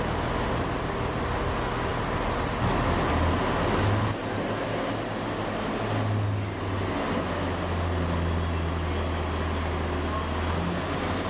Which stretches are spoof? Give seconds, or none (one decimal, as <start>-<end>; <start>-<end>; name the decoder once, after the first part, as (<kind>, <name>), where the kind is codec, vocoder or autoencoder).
none

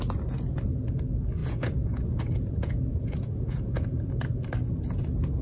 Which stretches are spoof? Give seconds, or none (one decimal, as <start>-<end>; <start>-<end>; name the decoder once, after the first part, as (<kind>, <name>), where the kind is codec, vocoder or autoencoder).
1.4-4.1 (vocoder, Vocos)

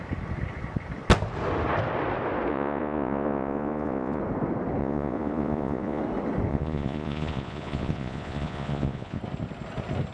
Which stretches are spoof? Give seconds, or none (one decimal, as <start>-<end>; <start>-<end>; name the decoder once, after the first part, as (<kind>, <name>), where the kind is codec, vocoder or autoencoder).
2.5-4.2 (vocoder, Vocos); 4.8-6.0; 6.5-9.2

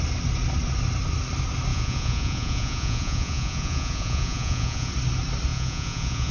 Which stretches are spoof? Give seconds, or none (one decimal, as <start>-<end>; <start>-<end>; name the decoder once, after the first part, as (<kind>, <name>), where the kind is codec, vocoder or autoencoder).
1.7-4.9 (vocoder, Vocos); 5.5-6.3

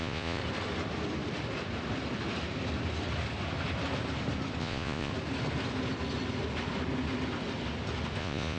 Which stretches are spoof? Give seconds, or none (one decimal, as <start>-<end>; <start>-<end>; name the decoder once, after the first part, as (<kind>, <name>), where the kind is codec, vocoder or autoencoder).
0.0-0.4 (vocoder, Vocos); 4.6-5.1; 8.2-8.6